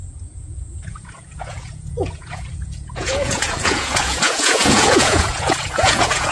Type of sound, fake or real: fake